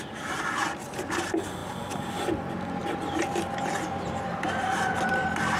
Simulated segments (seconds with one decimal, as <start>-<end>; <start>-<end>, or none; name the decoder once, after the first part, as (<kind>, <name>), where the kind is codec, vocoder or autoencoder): none